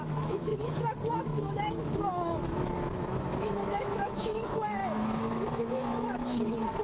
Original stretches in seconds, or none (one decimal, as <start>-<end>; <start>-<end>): none